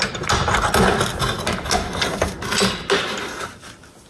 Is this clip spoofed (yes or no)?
no